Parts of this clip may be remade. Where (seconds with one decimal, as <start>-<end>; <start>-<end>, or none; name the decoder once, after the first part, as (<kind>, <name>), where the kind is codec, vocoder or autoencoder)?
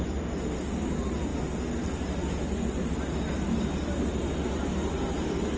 none